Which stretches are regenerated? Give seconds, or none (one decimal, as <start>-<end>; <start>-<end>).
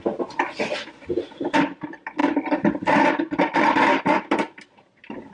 none